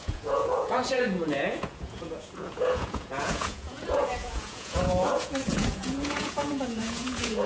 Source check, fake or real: fake